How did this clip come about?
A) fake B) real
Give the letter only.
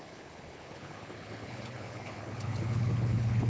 A